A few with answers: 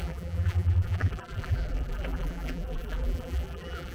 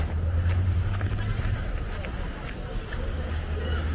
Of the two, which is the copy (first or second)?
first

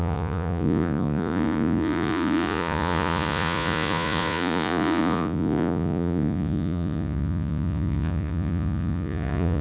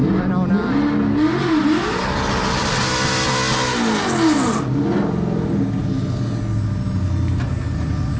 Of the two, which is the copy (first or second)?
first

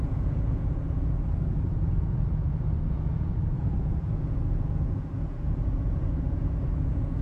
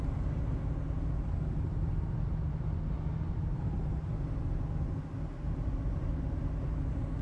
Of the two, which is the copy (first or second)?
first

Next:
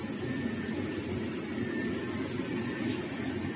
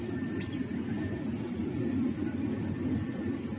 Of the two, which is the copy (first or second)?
second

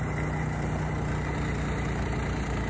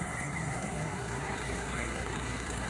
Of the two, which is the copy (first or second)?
second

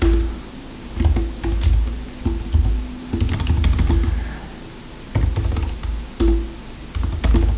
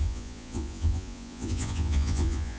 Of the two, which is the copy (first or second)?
second